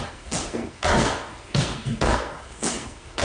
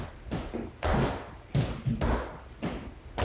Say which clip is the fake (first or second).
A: first